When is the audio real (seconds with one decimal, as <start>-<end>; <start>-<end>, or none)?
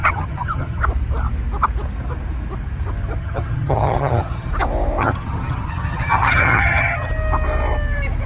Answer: 0.8-3.2; 4.5-5.0; 7.1-8.3